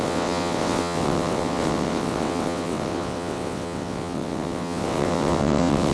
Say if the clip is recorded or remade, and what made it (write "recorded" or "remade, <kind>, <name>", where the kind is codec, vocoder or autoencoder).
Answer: remade, vocoder, WaveNeXt